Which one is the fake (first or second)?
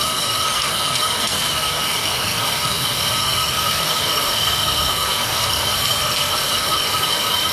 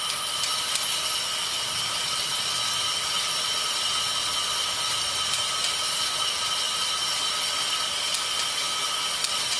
first